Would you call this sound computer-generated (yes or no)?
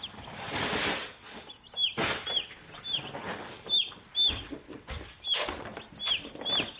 no